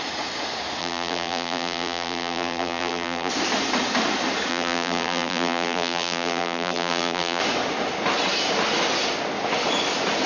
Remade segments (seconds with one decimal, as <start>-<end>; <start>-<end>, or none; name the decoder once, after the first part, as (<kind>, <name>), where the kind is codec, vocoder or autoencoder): 0.8-3.3 (vocoder, BigVGAN v2); 4.5-7.4